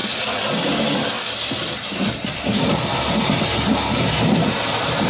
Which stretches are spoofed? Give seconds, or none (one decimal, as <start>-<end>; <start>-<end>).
none